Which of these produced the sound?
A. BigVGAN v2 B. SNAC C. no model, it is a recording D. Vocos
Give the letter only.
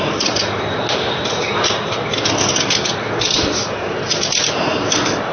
C